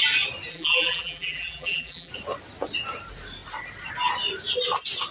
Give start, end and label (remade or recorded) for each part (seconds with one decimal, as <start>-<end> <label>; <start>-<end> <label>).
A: 0.0-0.5 recorded; 0.5-2.1 remade; 2.1-5.1 recorded